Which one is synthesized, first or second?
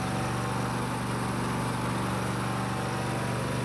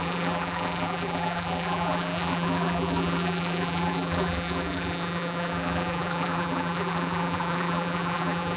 second